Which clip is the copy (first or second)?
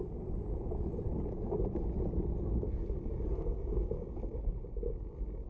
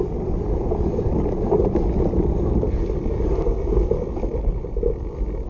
second